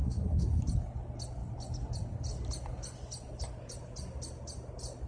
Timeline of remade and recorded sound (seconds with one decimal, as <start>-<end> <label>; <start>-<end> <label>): 0.0-0.6 remade; 0.6-5.1 recorded